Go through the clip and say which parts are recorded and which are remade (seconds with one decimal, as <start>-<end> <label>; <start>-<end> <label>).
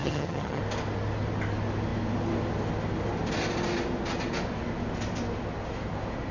0.0-0.6 remade; 0.6-6.3 recorded